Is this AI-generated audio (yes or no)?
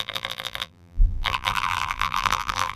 yes